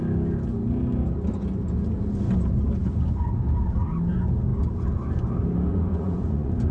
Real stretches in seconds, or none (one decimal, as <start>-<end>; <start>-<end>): 0.0-5.7